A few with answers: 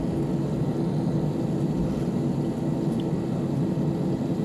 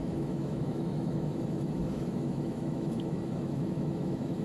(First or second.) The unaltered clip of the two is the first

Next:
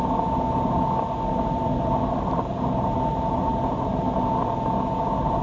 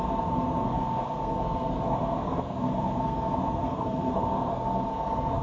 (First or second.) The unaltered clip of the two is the first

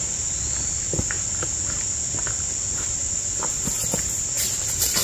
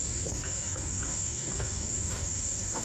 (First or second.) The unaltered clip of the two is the first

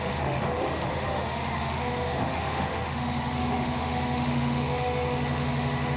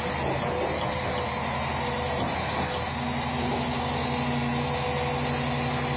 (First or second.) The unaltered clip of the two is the second